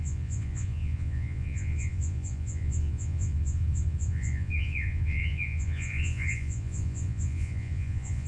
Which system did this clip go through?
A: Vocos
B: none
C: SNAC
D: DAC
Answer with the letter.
A